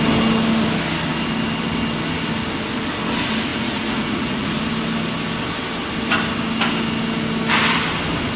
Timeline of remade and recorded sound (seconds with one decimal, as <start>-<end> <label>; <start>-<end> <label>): 0.0-3.5 recorded; 3.5-4.6 remade; 4.6-8.4 recorded